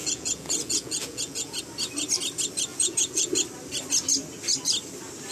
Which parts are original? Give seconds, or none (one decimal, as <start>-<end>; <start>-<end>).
1.6-2.7; 3.3-5.3